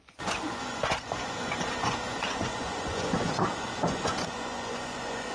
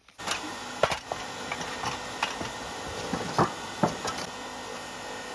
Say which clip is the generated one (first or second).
first